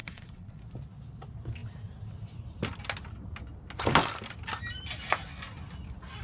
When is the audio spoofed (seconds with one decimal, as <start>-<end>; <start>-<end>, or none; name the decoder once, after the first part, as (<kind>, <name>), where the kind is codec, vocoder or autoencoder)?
0.0-0.6 (vocoder, Vocos)